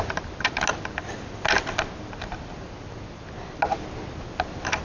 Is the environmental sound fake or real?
real